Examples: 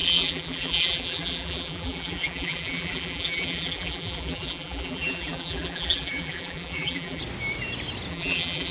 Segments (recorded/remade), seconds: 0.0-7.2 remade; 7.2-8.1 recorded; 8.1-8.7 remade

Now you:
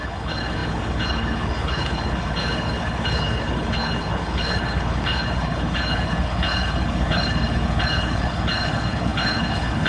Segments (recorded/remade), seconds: 0.0-9.9 remade

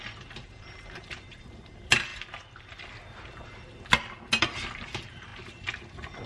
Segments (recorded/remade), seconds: 0.0-2.1 remade; 2.1-4.3 recorded; 4.3-6.3 remade

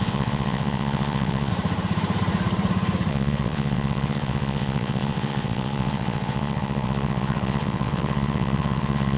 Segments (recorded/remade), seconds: 0.0-1.5 remade; 1.5-3.1 recorded; 3.1-9.2 remade

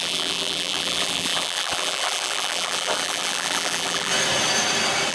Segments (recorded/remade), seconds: 0.0-4.1 remade; 4.1-5.1 recorded

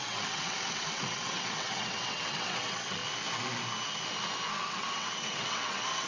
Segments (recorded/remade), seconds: 0.0-3.0 remade; 3.0-4.6 recorded; 4.6-6.1 remade

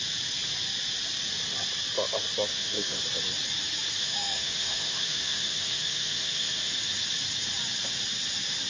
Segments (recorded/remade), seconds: 0.0-2.5 recorded; 2.5-3.0 remade; 3.0-4.0 recorded; 4.0-6.7 remade; 6.7-8.7 recorded

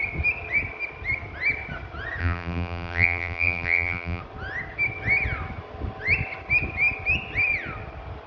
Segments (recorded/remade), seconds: 0.0-2.2 recorded; 2.2-4.2 remade; 4.2-8.3 recorded